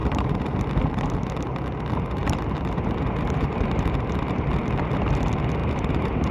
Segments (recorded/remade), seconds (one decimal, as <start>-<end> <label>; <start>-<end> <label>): 0.0-1.1 remade; 1.1-2.2 recorded; 2.2-4.5 remade; 4.5-5.6 recorded; 5.6-6.3 remade